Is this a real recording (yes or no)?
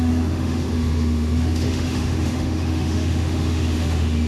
no